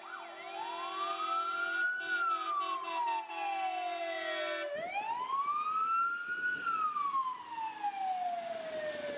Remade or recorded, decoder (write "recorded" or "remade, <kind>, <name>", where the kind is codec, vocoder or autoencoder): recorded